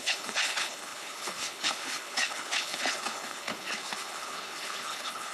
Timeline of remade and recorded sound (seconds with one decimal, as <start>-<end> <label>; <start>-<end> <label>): 0.0-5.3 remade